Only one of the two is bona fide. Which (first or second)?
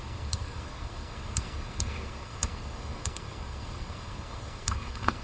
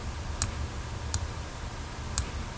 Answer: second